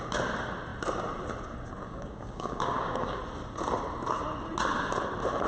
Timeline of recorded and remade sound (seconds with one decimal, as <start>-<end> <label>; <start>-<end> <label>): 0.0-1.8 recorded; 1.8-3.2 remade; 3.2-5.5 recorded